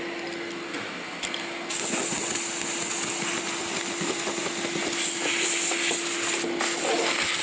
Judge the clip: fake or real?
real